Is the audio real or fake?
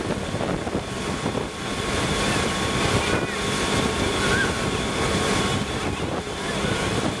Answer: real